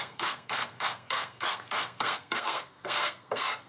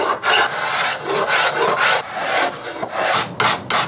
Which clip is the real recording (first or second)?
second